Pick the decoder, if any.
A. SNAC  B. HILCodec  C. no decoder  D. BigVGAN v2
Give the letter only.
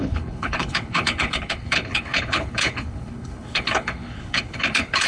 B